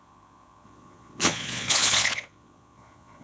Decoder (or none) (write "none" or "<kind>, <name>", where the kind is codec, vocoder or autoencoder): vocoder, Vocos